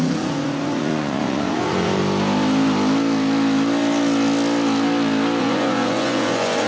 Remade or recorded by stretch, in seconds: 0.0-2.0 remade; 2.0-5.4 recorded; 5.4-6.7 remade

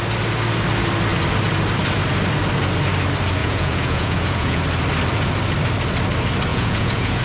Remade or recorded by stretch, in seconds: 0.0-3.4 recorded; 3.4-4.6 remade; 4.6-6.5 recorded; 6.5-7.2 remade

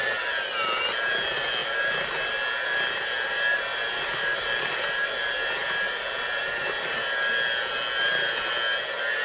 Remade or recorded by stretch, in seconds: 0.0-9.2 recorded

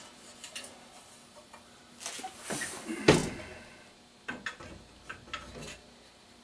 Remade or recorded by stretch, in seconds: 0.0-6.4 recorded

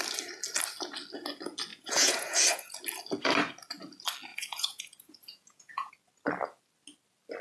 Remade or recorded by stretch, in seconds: 0.0-1.7 recorded; 1.7-2.7 remade; 2.7-4.3 recorded; 4.3-5.9 remade; 5.9-7.4 recorded

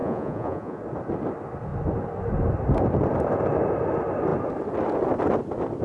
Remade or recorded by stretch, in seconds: 0.0-0.8 remade; 0.8-5.8 recorded